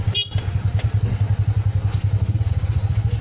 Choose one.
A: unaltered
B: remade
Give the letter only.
A